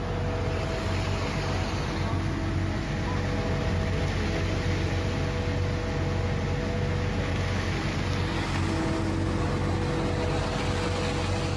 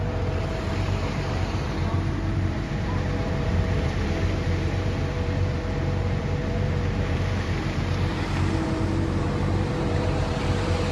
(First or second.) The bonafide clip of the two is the first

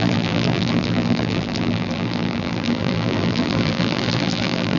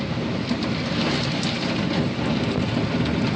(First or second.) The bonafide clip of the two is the second